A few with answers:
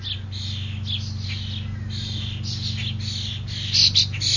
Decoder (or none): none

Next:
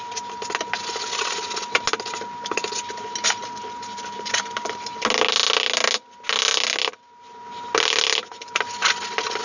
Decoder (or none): none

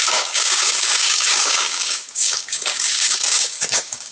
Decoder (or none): codec, DAC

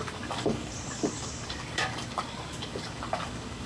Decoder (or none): codec, DAC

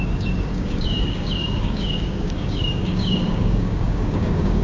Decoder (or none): codec, DAC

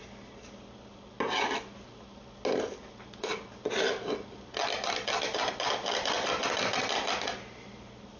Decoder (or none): none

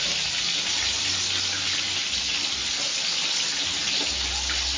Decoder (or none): none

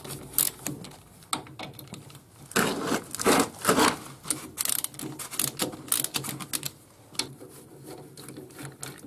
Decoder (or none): none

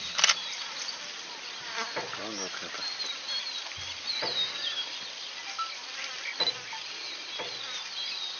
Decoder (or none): none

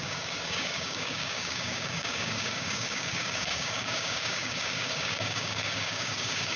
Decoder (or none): codec, DAC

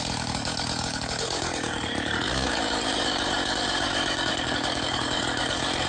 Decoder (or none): codec, DAC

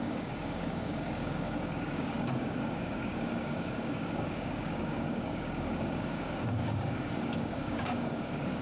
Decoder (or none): codec, DAC